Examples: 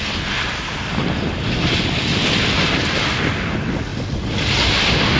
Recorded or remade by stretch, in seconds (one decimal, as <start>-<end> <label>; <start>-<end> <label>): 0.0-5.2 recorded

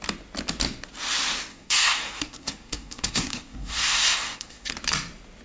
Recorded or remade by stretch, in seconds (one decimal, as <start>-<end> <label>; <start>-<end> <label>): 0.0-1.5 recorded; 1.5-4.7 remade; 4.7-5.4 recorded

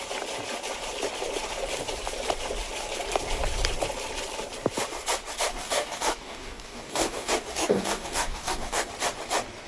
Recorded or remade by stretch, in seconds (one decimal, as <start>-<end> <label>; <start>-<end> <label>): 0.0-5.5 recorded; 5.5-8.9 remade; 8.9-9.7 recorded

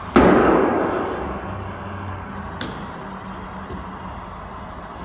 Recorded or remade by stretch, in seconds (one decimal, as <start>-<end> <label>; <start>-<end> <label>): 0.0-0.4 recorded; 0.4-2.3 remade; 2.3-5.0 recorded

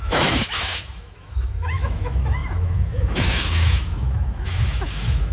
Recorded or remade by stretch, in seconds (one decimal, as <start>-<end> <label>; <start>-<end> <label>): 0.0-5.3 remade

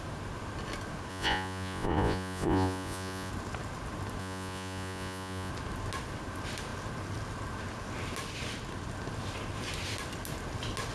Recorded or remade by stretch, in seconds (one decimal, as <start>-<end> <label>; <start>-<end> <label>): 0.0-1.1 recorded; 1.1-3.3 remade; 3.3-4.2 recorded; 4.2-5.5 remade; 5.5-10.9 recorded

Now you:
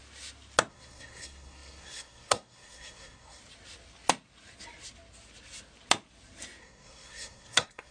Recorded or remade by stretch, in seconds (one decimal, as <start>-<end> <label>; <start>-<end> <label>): 0.0-0.7 recorded; 0.7-3.4 remade; 3.4-6.6 recorded; 6.6-7.9 remade